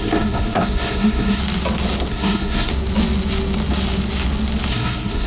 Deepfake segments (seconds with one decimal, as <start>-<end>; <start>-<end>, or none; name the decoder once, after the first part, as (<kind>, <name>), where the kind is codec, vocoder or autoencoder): 0.0-1.4 (codec, SNAC); 2.1-2.7; 4.7-5.3